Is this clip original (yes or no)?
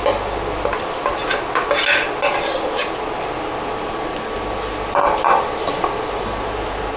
yes